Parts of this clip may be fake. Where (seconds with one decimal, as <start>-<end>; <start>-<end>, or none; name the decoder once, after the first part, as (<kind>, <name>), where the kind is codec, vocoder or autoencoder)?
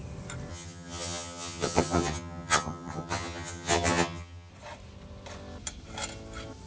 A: 0.5-4.5 (vocoder, HiFi-GAN)